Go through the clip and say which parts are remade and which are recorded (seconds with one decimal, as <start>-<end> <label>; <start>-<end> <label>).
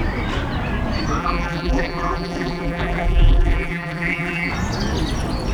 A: 0.0-1.2 recorded; 1.2-4.5 remade; 4.5-5.5 recorded